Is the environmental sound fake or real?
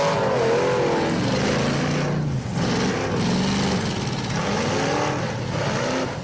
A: real